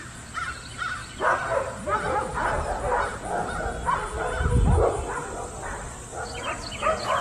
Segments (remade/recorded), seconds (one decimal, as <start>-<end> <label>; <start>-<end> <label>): 0.0-7.2 recorded